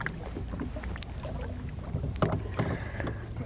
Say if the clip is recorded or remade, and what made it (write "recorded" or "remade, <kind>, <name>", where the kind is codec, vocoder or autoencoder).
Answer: recorded